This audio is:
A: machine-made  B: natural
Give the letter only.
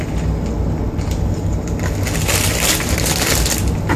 A